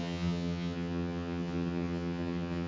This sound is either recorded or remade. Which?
remade